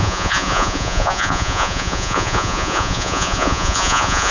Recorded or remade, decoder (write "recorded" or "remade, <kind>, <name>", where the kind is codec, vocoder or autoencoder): remade, vocoder, Vocos